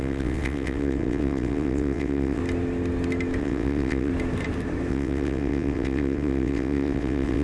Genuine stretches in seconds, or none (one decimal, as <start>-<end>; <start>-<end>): 2.4-3.4; 4.1-4.9